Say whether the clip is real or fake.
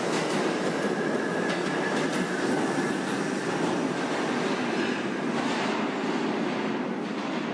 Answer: real